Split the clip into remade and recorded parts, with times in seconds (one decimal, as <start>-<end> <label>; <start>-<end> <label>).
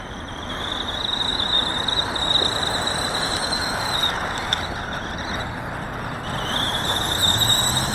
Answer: 0.0-7.9 recorded